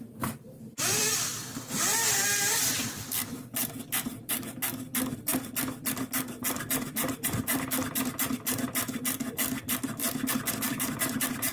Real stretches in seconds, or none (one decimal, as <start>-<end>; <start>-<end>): 5.3-6.6; 10.0-10.5